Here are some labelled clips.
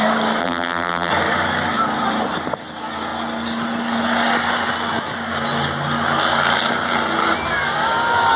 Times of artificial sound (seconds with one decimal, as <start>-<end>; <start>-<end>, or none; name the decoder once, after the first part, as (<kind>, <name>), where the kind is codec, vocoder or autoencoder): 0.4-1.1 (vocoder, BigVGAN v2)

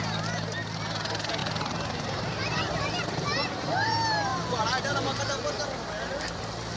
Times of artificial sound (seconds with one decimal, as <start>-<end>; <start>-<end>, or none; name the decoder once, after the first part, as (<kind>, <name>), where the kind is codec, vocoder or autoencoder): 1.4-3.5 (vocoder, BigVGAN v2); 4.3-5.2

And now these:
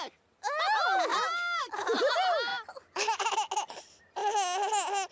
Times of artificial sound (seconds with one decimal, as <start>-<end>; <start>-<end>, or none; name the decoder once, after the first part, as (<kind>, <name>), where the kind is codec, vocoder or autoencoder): none

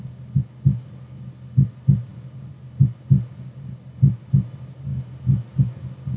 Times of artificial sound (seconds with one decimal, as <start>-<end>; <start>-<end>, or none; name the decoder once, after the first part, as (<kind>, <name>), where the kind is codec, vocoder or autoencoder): 2.1-2.6 (vocoder, BigVGAN v2)